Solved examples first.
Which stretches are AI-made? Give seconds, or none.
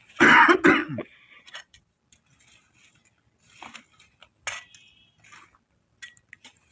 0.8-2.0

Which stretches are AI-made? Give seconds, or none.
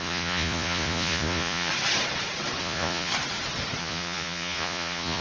0.0-1.7; 2.6-3.1; 3.8-5.2